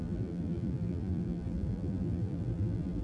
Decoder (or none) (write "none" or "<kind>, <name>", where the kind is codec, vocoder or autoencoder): vocoder, BigVGAN v2